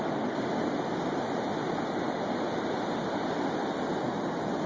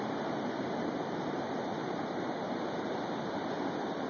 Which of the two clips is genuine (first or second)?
first